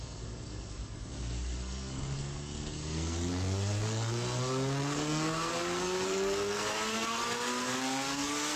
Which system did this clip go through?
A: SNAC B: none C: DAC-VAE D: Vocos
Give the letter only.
A